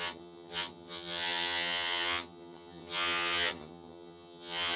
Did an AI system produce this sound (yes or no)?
yes